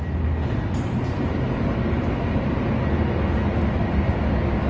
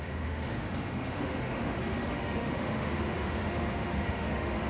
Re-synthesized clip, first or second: second